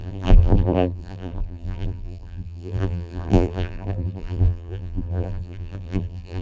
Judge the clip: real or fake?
fake